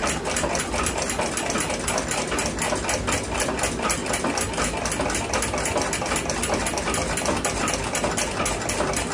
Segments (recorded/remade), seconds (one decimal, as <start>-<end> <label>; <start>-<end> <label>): 0.0-9.1 recorded